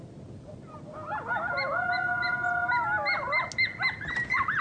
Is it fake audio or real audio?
real